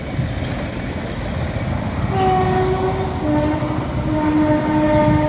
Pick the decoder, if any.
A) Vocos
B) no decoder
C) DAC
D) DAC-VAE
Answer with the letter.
B